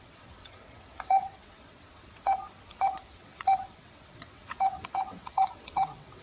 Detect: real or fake fake